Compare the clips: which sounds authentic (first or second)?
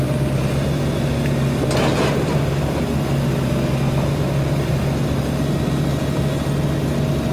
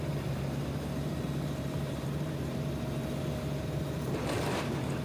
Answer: first